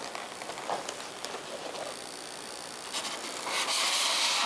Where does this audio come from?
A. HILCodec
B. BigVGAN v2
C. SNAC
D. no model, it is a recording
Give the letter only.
D